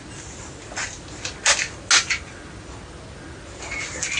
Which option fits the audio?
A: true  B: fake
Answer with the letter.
A